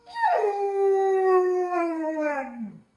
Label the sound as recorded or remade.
remade